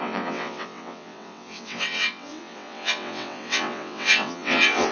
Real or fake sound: fake